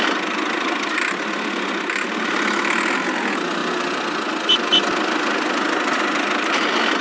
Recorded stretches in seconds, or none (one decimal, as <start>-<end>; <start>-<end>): 0.0-7.0